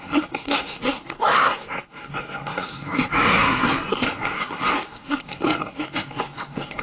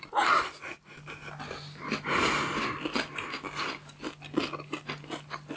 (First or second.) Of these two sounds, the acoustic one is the second